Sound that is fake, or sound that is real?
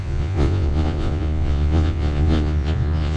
fake